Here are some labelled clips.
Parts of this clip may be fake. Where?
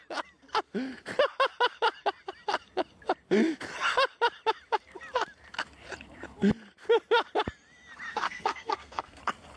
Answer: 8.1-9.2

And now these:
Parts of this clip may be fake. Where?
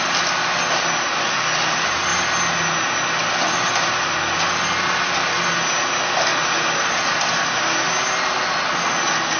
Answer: none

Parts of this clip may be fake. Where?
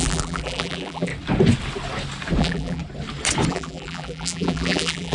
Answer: 0.0-1.1; 2.4-2.8; 3.5-5.1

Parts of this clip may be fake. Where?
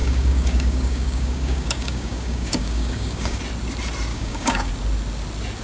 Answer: 0.0-3.4; 4.1-4.7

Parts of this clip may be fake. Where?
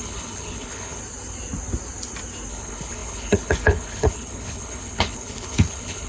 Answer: 0.0-1.0; 2.5-6.1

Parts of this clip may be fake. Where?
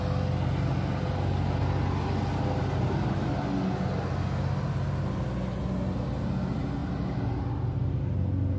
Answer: none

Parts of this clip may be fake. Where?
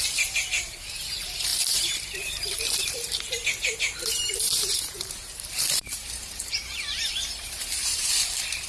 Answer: 0.0-8.7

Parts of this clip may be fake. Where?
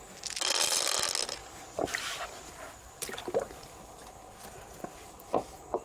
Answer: 1.4-2.9